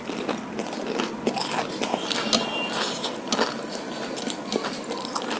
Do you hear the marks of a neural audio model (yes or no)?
no